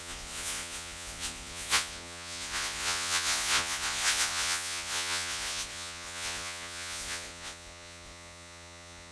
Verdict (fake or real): fake